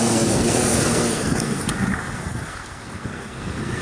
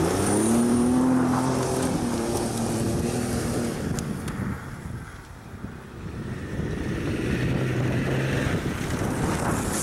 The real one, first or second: second